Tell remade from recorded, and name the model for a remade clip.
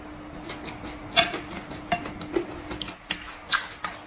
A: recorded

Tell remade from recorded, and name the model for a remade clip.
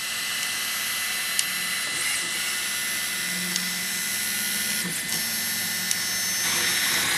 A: recorded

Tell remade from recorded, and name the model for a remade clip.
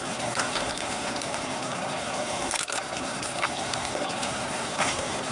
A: remade, codec, SNAC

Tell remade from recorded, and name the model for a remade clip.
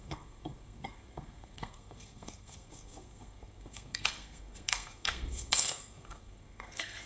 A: remade, codec, SNAC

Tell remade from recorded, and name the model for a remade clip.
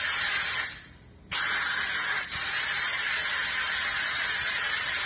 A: recorded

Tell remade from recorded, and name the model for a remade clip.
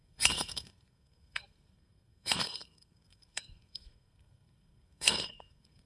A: remade, codec, SNAC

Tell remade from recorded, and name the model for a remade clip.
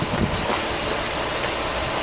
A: recorded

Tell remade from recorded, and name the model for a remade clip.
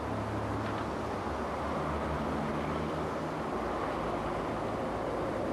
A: recorded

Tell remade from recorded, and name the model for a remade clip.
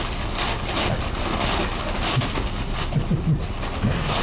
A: recorded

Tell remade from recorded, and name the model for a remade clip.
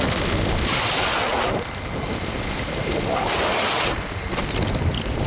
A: recorded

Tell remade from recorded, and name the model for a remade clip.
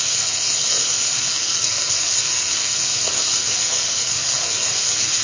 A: remade, codec, SNAC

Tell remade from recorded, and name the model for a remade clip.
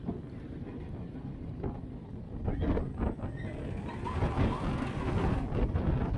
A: recorded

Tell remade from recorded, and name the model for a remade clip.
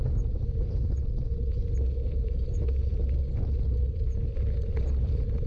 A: recorded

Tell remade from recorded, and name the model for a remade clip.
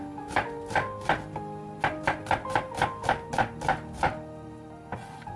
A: recorded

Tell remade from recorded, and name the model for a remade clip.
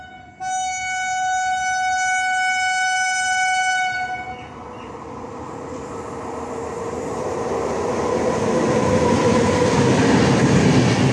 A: recorded